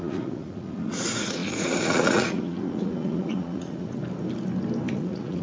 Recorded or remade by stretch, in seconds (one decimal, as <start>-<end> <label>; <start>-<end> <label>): 0.0-4.0 remade; 4.0-4.9 recorded; 4.9-5.4 remade

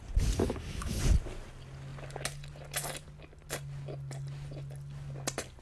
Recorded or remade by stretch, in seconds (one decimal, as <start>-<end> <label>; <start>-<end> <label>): 0.0-0.4 recorded; 0.4-1.0 remade; 1.0-5.6 recorded

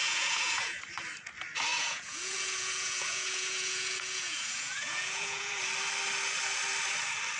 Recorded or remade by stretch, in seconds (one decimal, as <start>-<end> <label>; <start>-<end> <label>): 0.0-0.8 remade; 0.8-1.7 recorded; 1.7-5.6 remade; 5.6-7.4 recorded

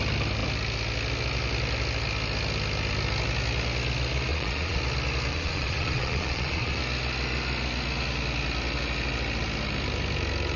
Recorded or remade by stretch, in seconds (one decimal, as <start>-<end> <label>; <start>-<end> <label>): 0.0-4.3 recorded; 4.3-4.8 remade; 4.8-5.3 recorded; 5.3-6.8 remade; 6.8-10.6 recorded